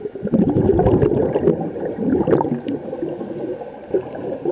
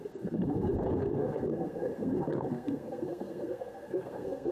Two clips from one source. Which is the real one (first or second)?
first